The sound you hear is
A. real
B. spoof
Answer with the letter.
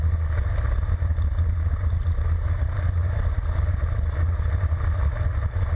A